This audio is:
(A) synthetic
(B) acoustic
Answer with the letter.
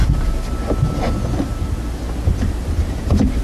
B